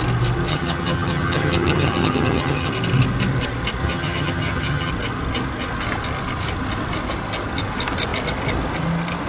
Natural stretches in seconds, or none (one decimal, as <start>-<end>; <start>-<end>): 0.0-0.5; 2.7-3.8; 4.9-9.3